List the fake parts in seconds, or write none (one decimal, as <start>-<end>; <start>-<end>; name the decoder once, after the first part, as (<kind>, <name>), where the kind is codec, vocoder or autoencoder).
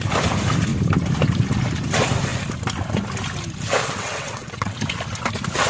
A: 3.8-4.8 (vocoder, WaveNeXt)